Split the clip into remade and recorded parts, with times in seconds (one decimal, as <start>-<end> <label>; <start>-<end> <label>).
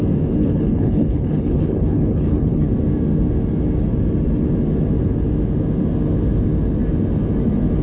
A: 0.0-0.4 recorded; 0.4-2.7 remade; 2.7-7.8 recorded